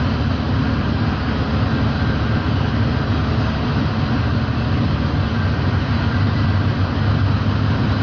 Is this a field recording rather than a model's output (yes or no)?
yes